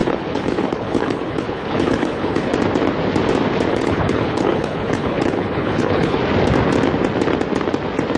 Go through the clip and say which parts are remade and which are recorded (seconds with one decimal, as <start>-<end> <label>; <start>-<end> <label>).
0.0-2.5 remade; 2.5-3.7 recorded; 3.7-6.2 remade; 6.2-8.2 recorded